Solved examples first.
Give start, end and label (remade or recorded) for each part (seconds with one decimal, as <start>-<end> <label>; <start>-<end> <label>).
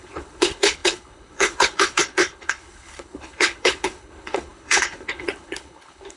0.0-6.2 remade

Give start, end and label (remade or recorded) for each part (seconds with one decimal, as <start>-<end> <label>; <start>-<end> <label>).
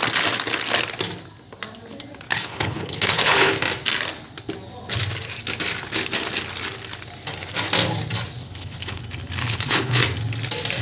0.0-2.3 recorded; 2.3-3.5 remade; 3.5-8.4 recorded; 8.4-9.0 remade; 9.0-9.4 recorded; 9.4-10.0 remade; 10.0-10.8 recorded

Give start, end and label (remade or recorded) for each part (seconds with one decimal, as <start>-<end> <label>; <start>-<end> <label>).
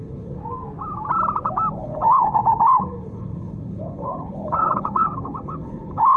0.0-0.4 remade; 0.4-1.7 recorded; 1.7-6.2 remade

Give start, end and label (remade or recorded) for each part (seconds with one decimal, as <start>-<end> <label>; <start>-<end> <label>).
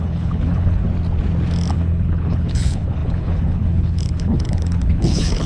0.0-0.8 remade; 0.8-1.7 recorded; 1.7-5.5 remade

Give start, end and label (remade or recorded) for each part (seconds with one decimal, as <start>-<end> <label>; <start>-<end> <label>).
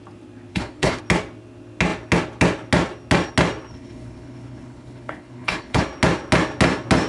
0.0-0.5 recorded; 0.5-1.0 remade; 1.0-3.7 recorded; 3.7-5.8 remade; 5.8-7.1 recorded